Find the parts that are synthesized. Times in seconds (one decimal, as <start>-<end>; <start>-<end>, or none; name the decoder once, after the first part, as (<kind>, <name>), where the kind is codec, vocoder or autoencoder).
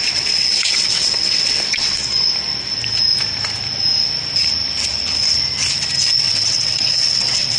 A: 0.0-2.0 (vocoder, WaveNeXt); 6.2-7.6